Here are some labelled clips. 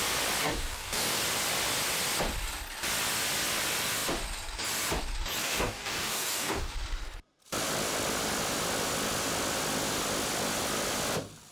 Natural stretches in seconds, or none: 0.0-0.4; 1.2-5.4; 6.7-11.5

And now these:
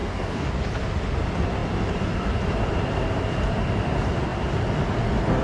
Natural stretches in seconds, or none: 0.5-5.4